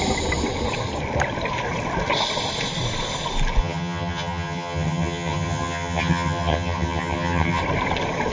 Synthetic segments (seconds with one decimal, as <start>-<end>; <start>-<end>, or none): 3.6-7.6